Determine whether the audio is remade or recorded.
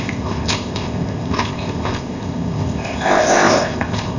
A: remade